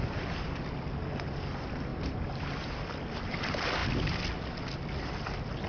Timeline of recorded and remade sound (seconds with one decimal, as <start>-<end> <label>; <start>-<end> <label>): 0.0-1.9 recorded; 1.9-2.8 remade; 2.8-5.7 recorded